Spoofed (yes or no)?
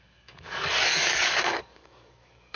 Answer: yes